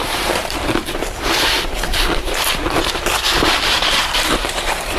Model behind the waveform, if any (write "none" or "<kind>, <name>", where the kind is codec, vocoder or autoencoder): vocoder, BigVGAN v2